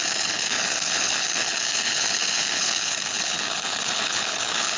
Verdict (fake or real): fake